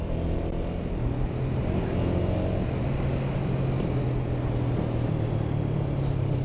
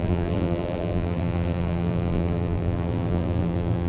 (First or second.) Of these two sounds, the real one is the first